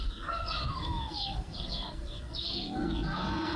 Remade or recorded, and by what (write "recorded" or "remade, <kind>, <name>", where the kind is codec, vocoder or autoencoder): remade, codec, SNAC